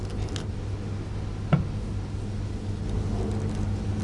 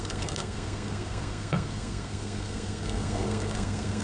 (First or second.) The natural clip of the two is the first